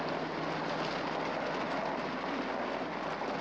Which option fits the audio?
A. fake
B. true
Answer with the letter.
B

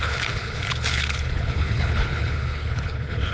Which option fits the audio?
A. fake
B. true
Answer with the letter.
A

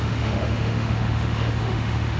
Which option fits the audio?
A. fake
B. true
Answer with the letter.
A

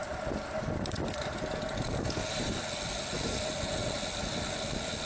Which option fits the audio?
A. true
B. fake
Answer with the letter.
A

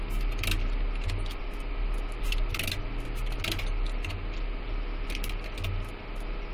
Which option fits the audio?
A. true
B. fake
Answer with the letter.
A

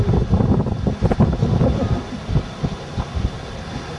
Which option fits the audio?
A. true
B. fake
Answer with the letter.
A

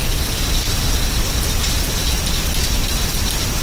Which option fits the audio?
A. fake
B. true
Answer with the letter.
B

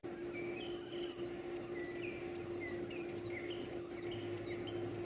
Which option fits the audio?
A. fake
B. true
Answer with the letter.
B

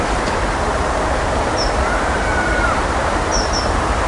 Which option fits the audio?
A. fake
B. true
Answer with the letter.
A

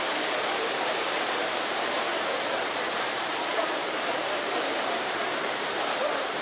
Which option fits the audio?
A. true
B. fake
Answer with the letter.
B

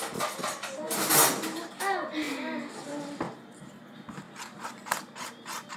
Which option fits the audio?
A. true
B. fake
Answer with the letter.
A